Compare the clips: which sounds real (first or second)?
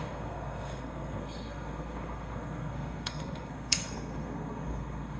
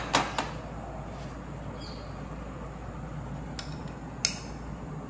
second